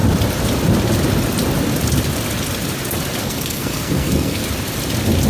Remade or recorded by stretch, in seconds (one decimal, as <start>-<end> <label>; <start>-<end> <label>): 0.0-3.2 recorded; 3.2-4.4 remade; 4.4-5.3 recorded